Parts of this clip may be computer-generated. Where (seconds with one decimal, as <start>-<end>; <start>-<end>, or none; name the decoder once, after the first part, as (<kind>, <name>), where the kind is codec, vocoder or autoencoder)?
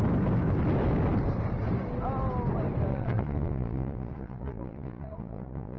2.9-5.8 (vocoder, Vocos)